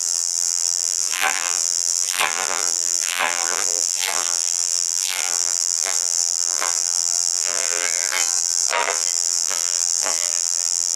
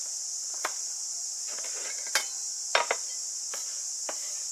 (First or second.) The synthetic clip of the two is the first